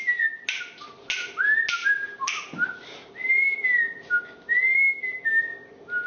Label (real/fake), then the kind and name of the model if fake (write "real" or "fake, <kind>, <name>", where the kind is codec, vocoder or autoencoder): real